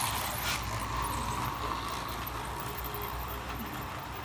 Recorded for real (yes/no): yes